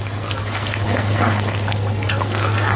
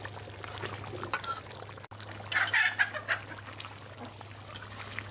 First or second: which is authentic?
second